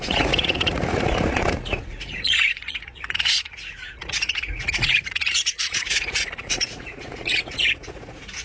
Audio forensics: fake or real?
fake